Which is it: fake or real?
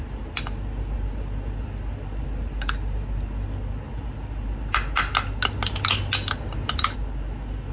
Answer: real